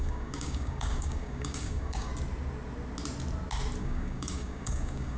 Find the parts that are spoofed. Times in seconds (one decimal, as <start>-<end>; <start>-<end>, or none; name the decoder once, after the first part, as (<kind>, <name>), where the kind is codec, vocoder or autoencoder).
0.0-2.1 (codec, DAC); 3.8-5.2